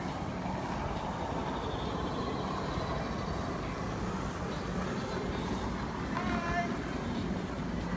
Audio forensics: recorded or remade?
recorded